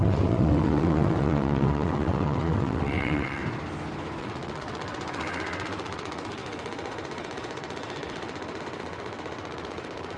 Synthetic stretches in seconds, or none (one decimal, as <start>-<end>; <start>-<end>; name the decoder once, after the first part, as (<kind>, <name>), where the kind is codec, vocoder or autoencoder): 0.0-3.4 (vocoder, WaveNeXt); 4.2-10.2